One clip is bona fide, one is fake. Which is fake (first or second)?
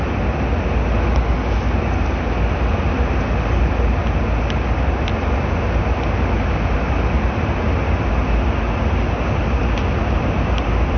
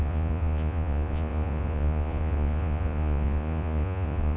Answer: second